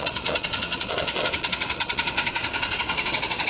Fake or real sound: fake